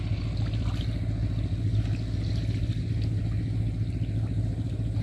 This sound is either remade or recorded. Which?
recorded